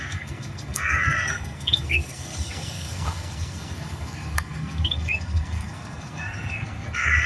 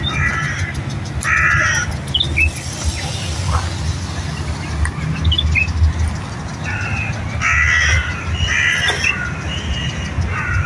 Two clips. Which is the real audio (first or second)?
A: second